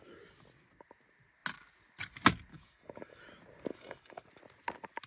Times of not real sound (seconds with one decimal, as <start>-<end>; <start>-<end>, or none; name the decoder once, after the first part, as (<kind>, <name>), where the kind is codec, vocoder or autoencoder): 2.5-3.2 (codec, DAC); 3.7-4.3